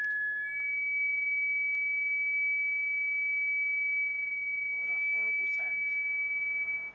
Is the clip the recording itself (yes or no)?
yes